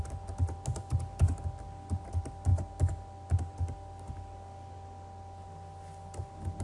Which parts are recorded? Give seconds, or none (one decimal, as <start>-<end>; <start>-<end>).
0.0-6.6